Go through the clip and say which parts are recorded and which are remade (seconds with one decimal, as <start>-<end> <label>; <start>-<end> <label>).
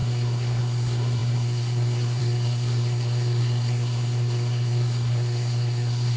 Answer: 0.0-6.2 remade